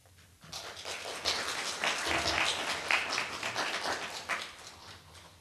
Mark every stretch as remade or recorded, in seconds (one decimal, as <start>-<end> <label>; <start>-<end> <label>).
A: 0.0-5.4 recorded